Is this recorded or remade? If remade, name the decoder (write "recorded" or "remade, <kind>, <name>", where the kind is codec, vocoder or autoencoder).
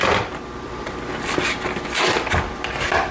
recorded